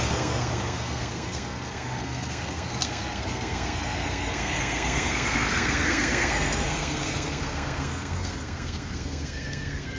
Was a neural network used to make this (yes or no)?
yes